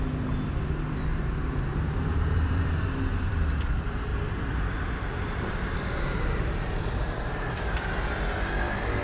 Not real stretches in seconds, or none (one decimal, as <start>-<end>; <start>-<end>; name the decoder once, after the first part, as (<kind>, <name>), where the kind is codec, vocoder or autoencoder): 1.1-2.8 (vocoder, BigVGAN v2); 4.1-7.6